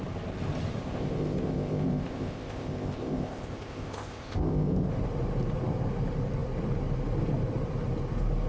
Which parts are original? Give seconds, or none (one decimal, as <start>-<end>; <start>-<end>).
0.0-0.8; 4.9-8.5